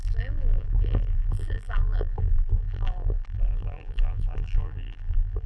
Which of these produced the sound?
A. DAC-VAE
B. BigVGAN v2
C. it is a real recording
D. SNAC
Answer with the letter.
B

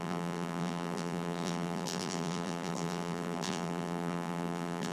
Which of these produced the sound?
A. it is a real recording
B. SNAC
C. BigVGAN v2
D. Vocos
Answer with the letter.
C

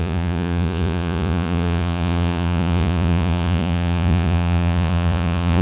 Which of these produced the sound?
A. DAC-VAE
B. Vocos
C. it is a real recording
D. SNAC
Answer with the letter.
B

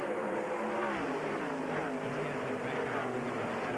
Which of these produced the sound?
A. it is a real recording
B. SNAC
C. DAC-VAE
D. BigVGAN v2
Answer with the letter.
A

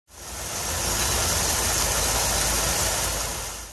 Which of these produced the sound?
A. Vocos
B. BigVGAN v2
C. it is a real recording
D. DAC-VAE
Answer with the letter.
C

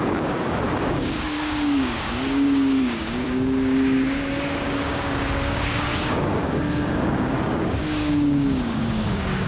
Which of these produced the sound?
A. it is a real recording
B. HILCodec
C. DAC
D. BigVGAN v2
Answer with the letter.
C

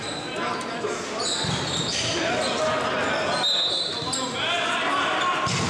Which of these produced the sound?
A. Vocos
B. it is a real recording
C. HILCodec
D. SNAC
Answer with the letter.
B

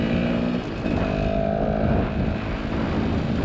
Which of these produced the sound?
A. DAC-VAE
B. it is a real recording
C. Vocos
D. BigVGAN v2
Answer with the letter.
B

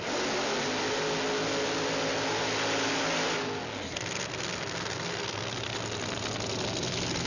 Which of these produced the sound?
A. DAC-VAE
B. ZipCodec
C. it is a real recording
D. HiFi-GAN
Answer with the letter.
C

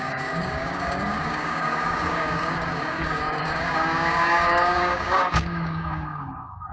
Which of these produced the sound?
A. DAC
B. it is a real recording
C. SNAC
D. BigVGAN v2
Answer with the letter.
A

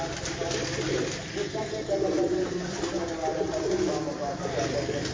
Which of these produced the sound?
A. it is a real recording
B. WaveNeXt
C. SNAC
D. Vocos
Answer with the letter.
A